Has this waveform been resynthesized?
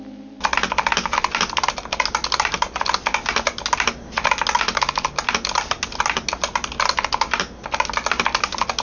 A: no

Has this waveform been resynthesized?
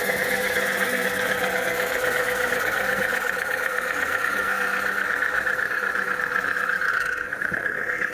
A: yes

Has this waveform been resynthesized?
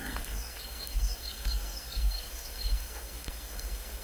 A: yes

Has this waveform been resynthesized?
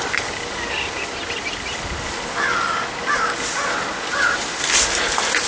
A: no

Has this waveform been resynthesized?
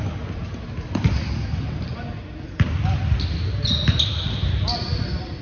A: no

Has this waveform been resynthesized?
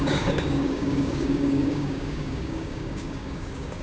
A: yes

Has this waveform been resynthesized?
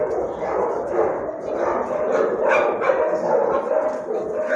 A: no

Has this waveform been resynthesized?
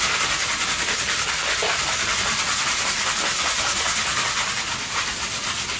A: no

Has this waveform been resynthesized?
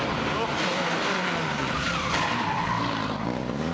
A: no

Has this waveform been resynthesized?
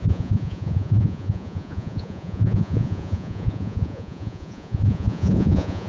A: yes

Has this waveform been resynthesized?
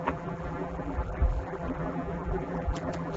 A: yes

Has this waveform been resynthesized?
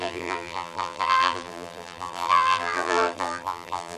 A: yes